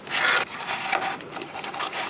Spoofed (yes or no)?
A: no